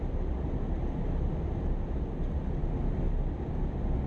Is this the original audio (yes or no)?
yes